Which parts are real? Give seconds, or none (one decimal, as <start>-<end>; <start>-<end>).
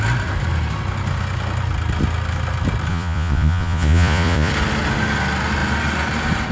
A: 0.0-2.9; 4.5-6.5